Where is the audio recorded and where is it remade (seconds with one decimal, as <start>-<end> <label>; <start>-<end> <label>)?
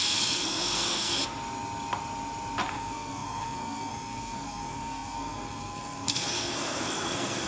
0.0-1.2 remade; 1.2-2.7 recorded; 2.7-7.5 remade